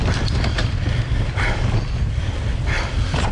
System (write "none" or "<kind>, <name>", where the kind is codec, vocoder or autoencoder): vocoder, BigVGAN v2